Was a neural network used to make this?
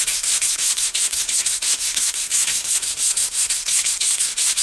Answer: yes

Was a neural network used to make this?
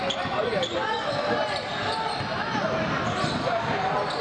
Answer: no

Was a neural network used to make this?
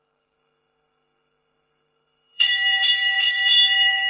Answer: yes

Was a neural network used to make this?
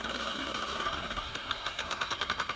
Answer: yes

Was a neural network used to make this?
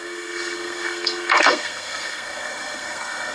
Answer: yes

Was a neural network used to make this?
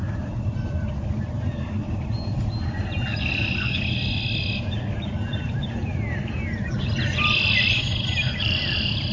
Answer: no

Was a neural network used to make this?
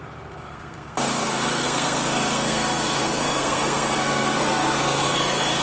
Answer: yes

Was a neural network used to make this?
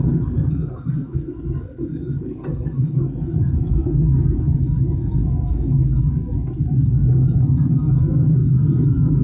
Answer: yes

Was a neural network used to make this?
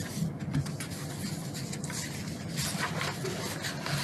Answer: no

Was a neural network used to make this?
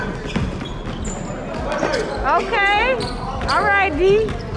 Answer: no